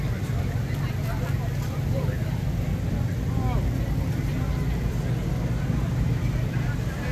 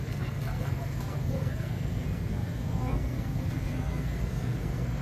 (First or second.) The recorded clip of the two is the first